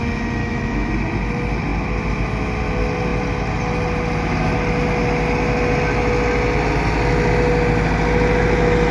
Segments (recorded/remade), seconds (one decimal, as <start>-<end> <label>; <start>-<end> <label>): 0.0-0.4 recorded; 0.4-0.9 remade; 0.9-8.9 recorded